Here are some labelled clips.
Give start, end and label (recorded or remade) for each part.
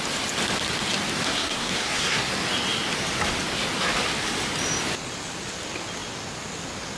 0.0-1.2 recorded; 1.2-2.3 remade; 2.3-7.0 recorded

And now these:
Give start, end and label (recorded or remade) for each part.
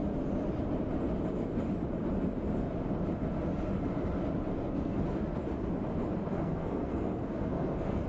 0.0-4.5 recorded; 4.5-5.0 remade; 5.0-6.2 recorded; 6.2-8.1 remade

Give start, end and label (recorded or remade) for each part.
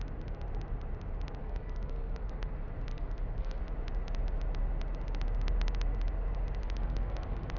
0.0-1.4 recorded; 1.4-2.5 remade; 2.5-2.9 recorded; 2.9-3.6 remade; 3.6-6.6 recorded; 6.6-7.6 remade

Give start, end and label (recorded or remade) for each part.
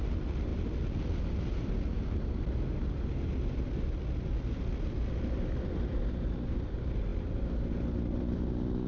0.0-8.9 recorded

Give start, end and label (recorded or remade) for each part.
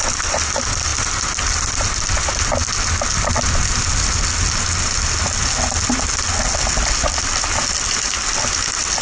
0.0-9.0 recorded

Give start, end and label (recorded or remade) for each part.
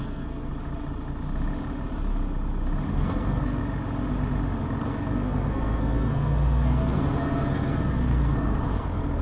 0.0-0.5 remade; 0.5-2.9 recorded; 2.9-3.6 remade; 3.6-4.8 recorded; 4.8-9.2 remade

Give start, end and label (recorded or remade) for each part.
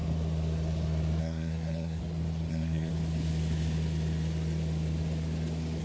0.0-1.2 recorded; 1.2-2.0 remade; 2.0-2.5 recorded; 2.5-2.9 remade; 2.9-5.8 recorded